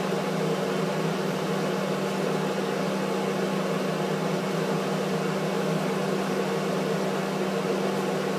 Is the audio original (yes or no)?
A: yes